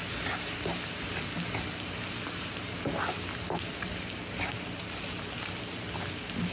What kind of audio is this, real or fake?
real